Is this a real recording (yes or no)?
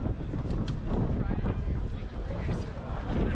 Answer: yes